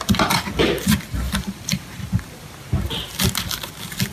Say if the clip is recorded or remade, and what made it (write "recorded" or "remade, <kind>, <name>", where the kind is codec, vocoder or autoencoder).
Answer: recorded